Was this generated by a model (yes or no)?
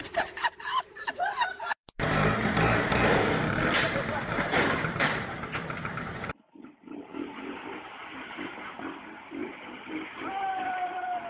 yes